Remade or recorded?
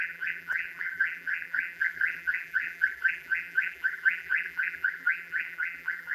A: remade